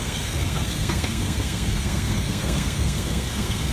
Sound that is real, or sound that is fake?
fake